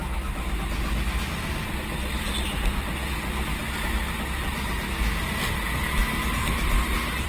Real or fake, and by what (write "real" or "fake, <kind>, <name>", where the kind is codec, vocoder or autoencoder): real